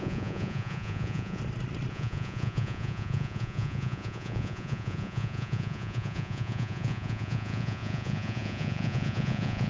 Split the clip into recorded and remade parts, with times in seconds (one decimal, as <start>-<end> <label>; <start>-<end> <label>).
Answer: 0.0-1.4 remade; 1.4-1.9 recorded; 1.9-9.7 remade